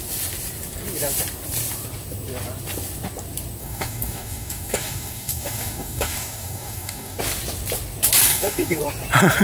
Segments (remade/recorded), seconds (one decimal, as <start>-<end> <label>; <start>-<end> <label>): 0.0-3.6 recorded; 3.6-7.2 remade; 7.2-8.3 recorded; 8.3-8.8 remade; 8.8-9.4 recorded

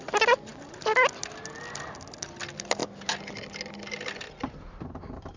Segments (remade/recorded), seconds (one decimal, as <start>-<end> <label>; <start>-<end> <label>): 0.0-5.4 recorded

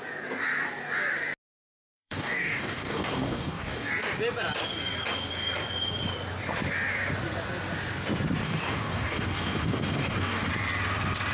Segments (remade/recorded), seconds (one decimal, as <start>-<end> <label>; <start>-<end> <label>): 0.0-1.9 recorded; 1.9-3.9 remade; 3.9-8.4 recorded; 8.4-10.5 remade; 10.5-11.3 recorded

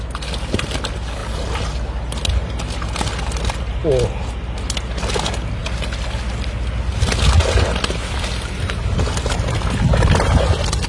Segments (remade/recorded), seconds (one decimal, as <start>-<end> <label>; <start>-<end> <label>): 0.0-10.9 recorded